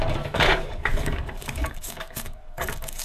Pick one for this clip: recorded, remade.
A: remade